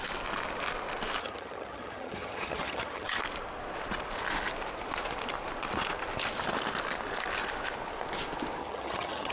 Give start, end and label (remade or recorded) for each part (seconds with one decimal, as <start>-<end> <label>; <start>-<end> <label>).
0.0-1.2 recorded; 1.2-3.2 remade; 3.2-8.6 recorded; 8.6-9.3 remade